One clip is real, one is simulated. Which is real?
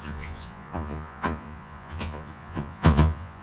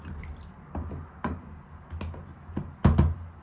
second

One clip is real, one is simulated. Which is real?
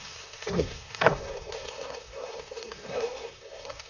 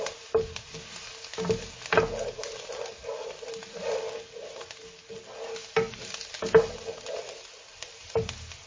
second